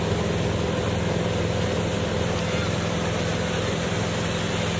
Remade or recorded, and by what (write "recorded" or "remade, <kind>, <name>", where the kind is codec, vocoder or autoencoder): recorded